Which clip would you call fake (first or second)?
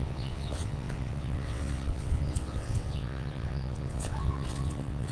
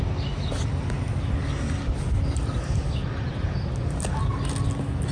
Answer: first